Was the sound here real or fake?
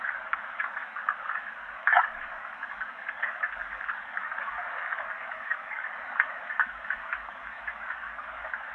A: fake